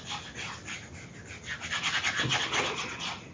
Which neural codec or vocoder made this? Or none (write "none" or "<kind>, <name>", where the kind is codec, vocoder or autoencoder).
none